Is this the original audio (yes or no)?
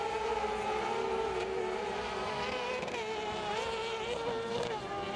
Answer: no